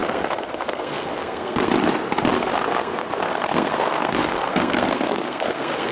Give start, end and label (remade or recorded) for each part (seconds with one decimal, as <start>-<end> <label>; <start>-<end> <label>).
0.0-1.7 remade; 1.7-2.3 recorded; 2.3-5.9 remade